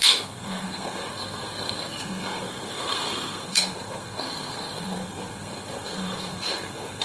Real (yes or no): no